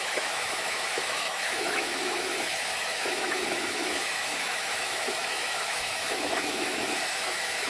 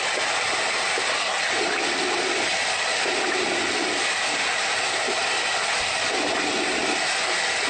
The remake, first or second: first